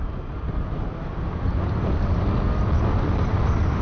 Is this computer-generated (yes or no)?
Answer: no